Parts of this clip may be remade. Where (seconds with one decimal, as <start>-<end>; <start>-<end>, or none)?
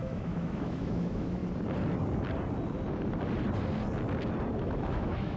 0.0-1.4; 4.6-5.4